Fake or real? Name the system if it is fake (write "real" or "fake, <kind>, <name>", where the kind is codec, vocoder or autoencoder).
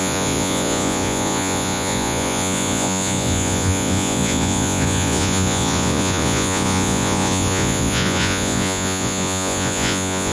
fake, vocoder, Vocos